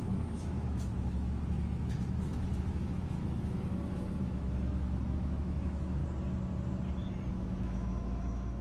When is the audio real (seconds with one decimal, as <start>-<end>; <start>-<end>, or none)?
6.0-7.3

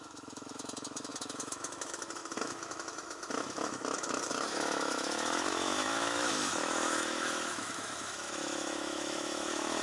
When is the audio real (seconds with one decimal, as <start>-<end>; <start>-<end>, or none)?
none

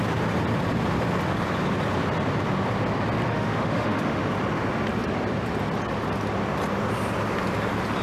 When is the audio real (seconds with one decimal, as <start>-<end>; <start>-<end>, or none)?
0.0-3.3; 4.2-8.0

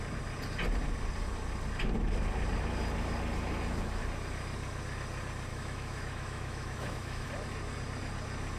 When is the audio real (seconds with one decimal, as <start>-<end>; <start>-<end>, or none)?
0.0-5.5; 7.3-8.6